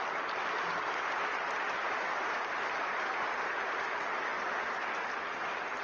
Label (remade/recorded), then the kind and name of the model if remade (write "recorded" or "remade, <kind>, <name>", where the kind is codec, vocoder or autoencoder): recorded